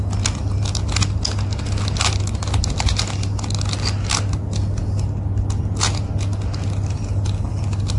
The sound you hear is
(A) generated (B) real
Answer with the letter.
B